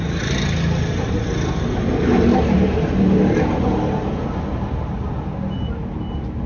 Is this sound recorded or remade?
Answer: recorded